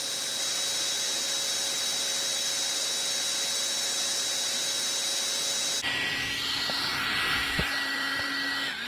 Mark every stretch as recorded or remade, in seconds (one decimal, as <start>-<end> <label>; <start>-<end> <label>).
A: 0.0-6.9 recorded; 6.9-8.3 remade; 8.3-8.9 recorded